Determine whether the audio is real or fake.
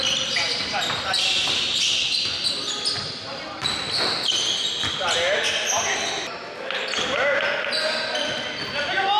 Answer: real